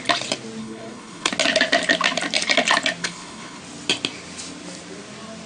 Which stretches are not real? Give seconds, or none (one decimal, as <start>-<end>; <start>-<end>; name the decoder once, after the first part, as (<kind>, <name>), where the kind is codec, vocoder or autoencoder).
0.6-1.3 (codec, HILCodec); 3.0-3.6